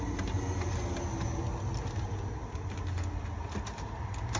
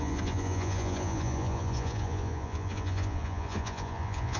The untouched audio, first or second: first